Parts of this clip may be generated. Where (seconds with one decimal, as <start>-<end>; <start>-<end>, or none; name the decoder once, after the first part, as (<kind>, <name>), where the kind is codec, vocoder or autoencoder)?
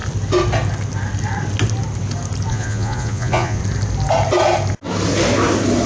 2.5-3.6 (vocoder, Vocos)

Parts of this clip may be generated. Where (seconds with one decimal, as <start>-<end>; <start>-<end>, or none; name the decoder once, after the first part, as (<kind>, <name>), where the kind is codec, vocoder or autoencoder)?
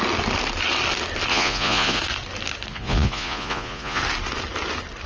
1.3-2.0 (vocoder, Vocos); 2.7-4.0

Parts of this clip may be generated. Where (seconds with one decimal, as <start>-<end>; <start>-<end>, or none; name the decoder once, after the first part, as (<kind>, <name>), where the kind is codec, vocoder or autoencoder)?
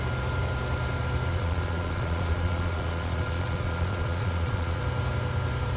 1.3-4.8 (vocoder, Vocos)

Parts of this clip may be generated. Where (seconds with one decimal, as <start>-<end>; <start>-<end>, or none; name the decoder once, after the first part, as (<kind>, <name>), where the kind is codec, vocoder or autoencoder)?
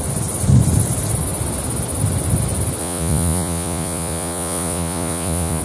2.8-5.6 (vocoder, Vocos)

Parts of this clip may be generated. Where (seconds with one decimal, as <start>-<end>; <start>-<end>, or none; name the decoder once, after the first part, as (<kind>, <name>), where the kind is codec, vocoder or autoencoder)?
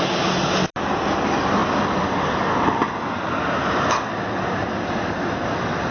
none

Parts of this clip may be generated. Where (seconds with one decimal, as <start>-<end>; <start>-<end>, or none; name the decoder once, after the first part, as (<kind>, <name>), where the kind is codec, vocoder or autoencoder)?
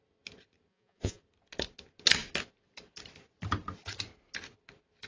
0.7-1.2 (vocoder, Vocos)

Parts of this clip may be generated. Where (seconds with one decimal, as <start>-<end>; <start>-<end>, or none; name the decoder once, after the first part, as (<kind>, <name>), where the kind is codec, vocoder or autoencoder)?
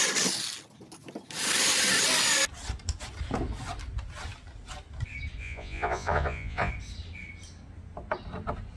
5.4-6.7 (vocoder, Vocos)